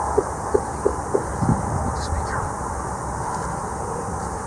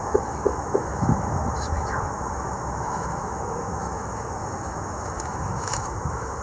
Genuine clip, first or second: first